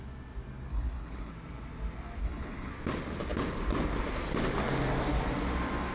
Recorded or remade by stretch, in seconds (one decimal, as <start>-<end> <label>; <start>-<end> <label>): 0.0-0.7 recorded; 0.7-1.3 remade; 1.3-2.2 recorded; 2.2-2.7 remade; 2.7-5.9 recorded